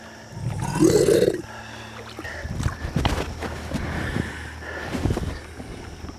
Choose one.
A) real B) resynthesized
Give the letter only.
A